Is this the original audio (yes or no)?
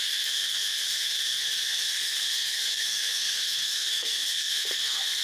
no